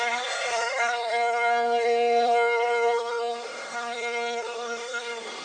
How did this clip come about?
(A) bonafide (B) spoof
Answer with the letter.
B